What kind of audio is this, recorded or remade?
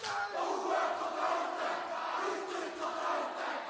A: recorded